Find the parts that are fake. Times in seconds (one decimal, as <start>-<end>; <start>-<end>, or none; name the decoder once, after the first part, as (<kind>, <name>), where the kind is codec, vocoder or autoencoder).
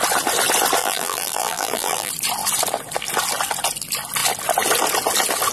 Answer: 0.8-2.1 (vocoder, BigVGAN v2)